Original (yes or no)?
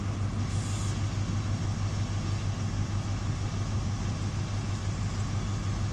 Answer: yes